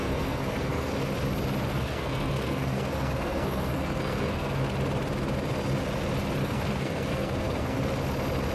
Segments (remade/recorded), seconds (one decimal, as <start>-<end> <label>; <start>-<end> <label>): 0.0-0.9 remade; 0.9-1.7 recorded; 1.7-4.6 remade; 4.6-6.4 recorded; 6.4-7.8 remade; 7.8-8.5 recorded